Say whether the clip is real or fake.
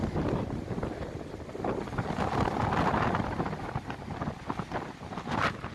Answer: real